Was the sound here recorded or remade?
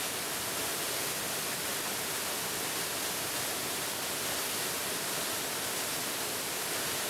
recorded